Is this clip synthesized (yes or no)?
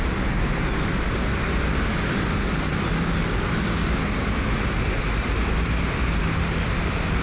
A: no